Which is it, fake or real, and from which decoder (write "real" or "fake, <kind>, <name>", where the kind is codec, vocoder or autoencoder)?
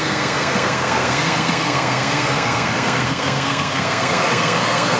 fake, codec, SNAC